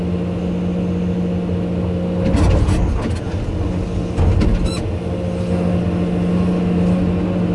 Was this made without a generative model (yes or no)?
yes